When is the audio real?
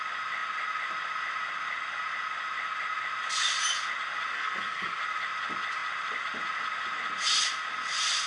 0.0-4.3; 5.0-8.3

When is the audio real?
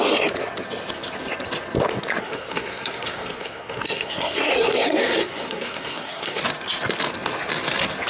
0.0-2.2; 6.4-8.1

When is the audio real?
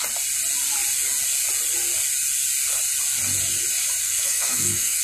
0.0-4.0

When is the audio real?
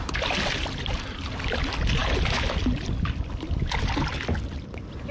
0.0-5.1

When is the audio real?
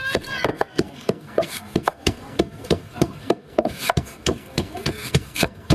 none